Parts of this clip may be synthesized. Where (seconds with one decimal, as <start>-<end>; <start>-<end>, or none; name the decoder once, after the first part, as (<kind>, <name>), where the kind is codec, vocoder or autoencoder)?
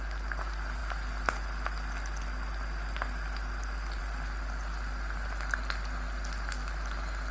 none